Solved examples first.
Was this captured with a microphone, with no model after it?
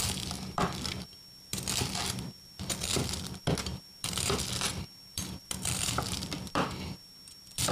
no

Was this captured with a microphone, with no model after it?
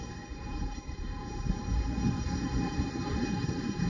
no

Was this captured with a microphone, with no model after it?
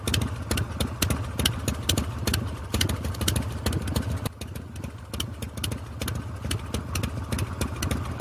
yes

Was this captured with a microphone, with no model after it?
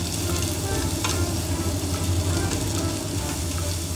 yes